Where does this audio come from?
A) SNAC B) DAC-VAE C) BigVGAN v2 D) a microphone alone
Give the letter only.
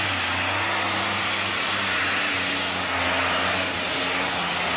D